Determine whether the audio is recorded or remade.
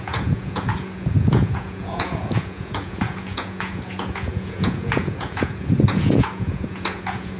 remade